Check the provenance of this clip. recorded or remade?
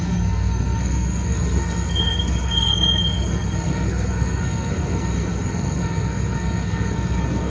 remade